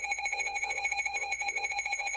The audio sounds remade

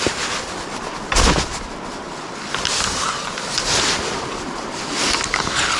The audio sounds recorded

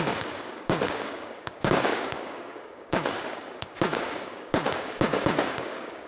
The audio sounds remade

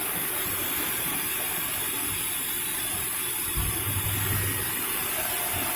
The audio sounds recorded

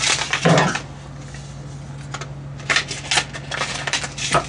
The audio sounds recorded